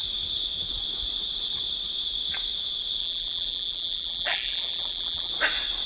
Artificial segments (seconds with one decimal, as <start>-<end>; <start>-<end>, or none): 3.0-5.3